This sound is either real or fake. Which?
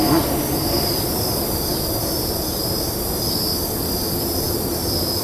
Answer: real